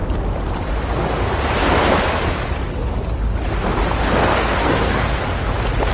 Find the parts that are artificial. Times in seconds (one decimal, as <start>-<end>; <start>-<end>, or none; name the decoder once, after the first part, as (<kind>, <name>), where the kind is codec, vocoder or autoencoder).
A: 4.3-5.2 (codec, SNAC)